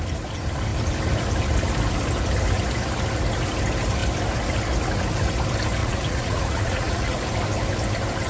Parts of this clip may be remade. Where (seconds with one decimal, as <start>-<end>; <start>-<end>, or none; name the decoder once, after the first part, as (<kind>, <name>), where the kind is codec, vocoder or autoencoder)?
5.8-7.2 (vocoder, Vocos)